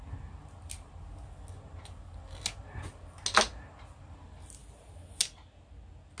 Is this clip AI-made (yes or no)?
no